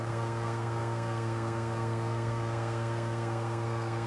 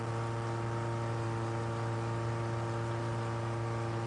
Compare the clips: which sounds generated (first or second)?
first